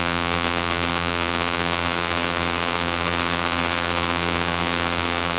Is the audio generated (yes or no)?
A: yes